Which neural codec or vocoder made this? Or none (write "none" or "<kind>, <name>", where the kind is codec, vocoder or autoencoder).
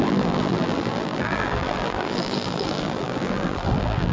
vocoder, BigVGAN v2